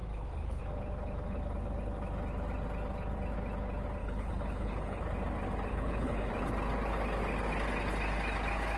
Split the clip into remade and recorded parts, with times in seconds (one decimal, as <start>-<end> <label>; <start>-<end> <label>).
0.0-0.6 remade; 0.6-4.0 recorded; 4.0-5.0 remade; 5.0-5.7 recorded; 5.7-6.3 remade; 6.3-8.8 recorded